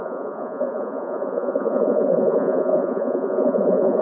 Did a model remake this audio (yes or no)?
yes